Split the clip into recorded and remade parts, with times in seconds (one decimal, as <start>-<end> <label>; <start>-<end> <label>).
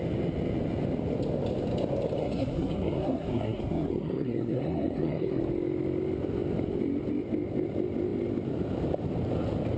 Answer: 0.0-2.2 recorded; 2.2-5.4 remade; 5.4-9.8 recorded